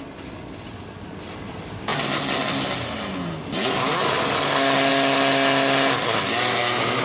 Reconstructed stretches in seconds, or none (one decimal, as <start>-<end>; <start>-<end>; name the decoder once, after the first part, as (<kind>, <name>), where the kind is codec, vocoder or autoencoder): none